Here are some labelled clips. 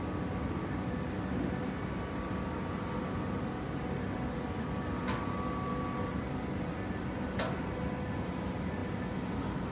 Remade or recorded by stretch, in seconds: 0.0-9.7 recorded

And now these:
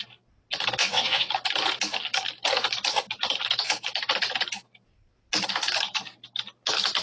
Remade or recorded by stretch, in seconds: 0.0-0.8 recorded; 0.8-1.3 remade; 1.3-7.0 recorded

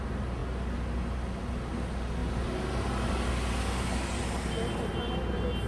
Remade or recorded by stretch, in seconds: 0.0-5.7 recorded

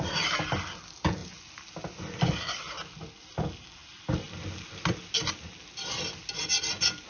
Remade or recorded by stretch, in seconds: 0.0-7.1 recorded

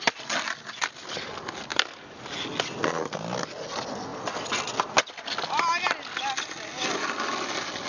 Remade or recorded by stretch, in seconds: 0.0-7.9 recorded